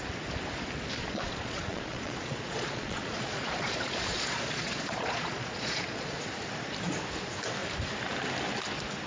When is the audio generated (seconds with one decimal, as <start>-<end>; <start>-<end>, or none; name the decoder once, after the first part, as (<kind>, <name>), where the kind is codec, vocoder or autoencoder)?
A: 1.0-6.2 (vocoder, Vocos)